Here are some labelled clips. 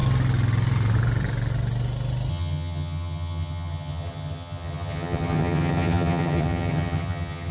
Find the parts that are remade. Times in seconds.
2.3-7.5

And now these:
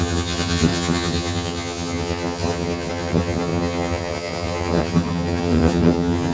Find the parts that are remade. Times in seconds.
0.0-6.3

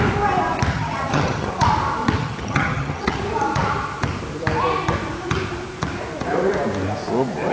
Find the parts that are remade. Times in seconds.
0.7-1.5; 2.2-3.2

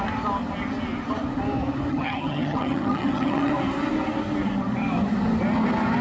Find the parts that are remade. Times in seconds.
1.9-3.5

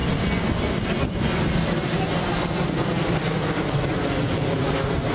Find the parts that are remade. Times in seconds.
none

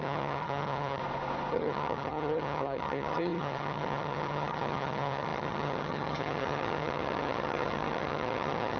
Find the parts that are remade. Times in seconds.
0.0-1.0; 1.5-8.8

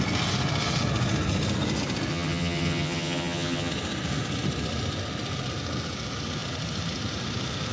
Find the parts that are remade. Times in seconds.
2.1-3.7